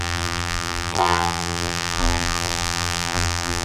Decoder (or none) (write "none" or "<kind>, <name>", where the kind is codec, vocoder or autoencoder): vocoder, BigVGAN v2